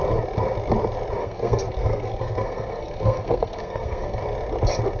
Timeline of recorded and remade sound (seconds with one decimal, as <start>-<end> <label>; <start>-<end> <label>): 0.0-1.2 recorded; 1.2-4.2 remade; 4.2-5.0 recorded